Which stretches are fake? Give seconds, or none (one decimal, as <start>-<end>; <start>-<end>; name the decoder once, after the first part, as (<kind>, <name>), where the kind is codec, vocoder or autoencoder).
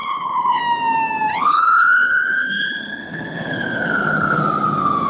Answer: 0.0-0.6 (codec, HILCodec); 1.3-4.4